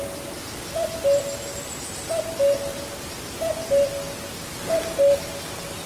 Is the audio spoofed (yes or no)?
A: no